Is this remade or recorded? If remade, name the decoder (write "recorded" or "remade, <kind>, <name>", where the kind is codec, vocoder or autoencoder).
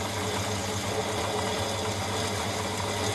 recorded